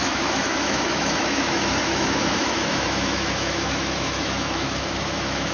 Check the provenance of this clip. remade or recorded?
remade